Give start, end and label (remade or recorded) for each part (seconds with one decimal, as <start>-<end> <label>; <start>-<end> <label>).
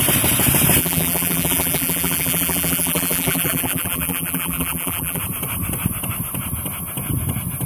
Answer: 0.0-0.8 recorded; 0.8-5.2 remade; 5.2-7.7 recorded